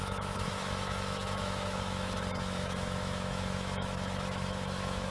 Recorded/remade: remade